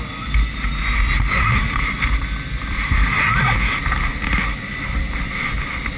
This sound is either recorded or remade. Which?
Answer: recorded